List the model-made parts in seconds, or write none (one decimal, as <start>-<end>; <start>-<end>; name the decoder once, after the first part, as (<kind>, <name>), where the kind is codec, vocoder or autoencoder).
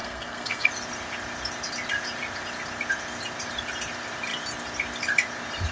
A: 0.0-0.7 (codec, SNAC)